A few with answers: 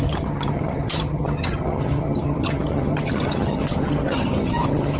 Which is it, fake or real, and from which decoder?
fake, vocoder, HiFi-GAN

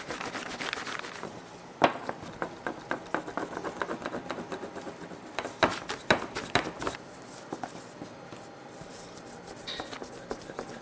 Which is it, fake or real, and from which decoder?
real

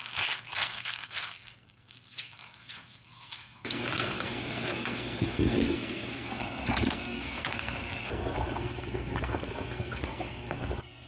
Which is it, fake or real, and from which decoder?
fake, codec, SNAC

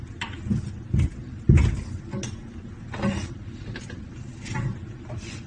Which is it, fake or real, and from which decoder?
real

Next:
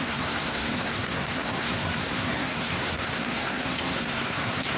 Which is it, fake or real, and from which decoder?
fake, codec, SNAC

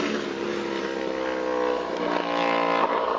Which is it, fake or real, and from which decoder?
real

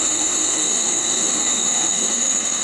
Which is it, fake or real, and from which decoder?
fake, autoencoder, DAC-VAE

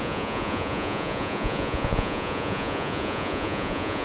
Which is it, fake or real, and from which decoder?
fake, vocoder, Vocos